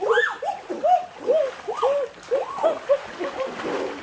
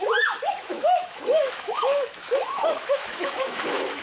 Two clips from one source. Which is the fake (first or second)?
second